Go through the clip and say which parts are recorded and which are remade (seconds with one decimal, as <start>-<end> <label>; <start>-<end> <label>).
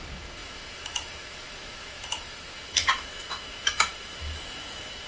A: 0.0-5.1 remade